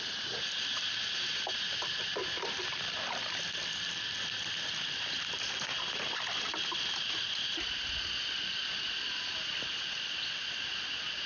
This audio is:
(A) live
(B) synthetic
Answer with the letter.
A